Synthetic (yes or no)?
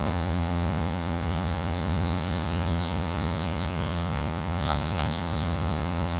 yes